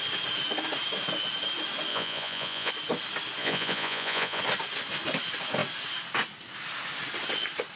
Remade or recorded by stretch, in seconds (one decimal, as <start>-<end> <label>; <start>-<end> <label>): 0.0-1.9 recorded; 1.9-2.7 remade; 2.7-3.4 recorded; 3.4-4.4 remade; 4.4-7.8 recorded